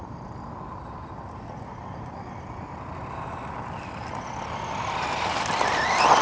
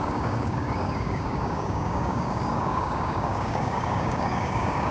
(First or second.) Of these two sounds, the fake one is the second